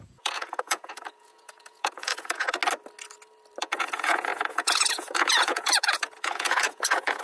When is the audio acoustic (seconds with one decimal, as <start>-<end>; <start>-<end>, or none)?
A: 2.6-3.6